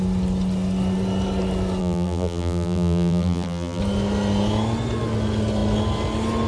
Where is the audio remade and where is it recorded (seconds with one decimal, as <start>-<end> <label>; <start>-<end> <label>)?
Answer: 0.0-1.8 recorded; 1.8-3.8 remade; 3.8-6.5 recorded